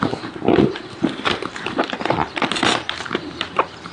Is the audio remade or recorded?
remade